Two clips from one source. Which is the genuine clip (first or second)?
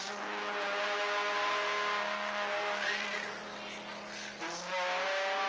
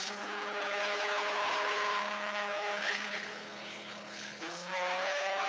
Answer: first